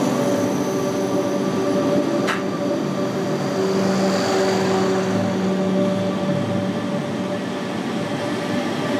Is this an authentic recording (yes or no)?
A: yes